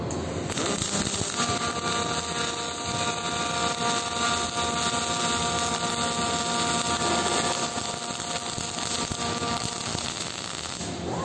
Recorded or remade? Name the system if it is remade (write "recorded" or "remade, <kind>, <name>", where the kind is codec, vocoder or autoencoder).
recorded